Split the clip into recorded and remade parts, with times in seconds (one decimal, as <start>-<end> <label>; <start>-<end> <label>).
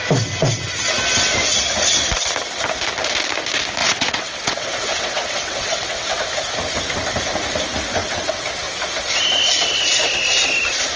0.0-3.8 recorded; 3.8-6.2 remade; 6.2-8.0 recorded; 8.0-8.5 remade; 8.5-11.0 recorded